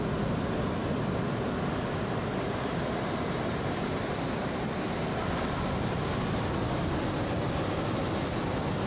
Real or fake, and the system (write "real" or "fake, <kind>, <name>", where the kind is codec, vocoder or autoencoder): real